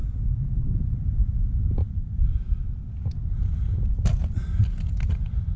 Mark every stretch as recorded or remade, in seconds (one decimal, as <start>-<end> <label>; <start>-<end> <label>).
0.0-5.6 recorded